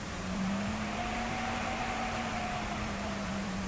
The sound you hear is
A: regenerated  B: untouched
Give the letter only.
A